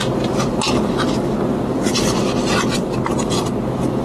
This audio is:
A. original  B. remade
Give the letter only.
A